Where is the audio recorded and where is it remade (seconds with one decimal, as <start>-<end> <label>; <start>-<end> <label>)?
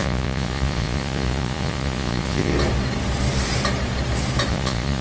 0.0-2.5 remade; 2.5-4.5 recorded; 4.5-5.0 remade